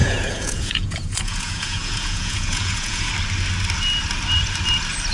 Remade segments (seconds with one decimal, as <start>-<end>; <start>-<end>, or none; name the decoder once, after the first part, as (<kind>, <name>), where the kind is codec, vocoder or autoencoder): 0.0-3.1 (vocoder, Vocos)